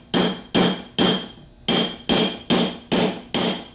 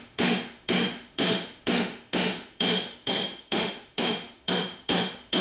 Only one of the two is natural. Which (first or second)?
first